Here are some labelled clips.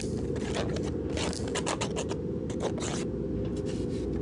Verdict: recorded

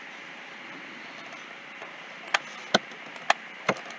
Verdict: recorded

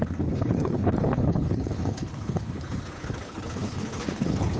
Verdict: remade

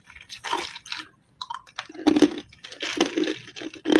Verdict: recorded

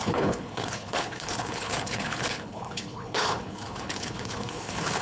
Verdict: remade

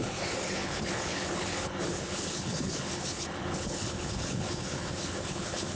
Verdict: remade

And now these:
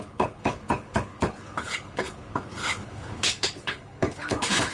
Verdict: remade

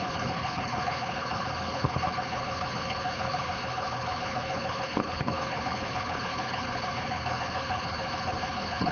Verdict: remade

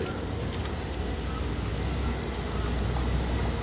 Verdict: recorded